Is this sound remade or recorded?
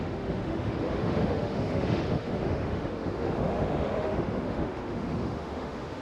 remade